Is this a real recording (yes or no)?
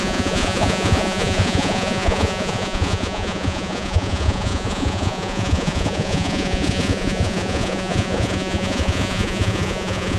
no